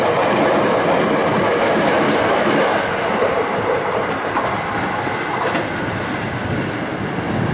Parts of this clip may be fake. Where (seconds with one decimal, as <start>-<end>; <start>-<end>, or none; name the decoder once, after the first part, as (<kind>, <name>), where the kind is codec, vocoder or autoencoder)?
none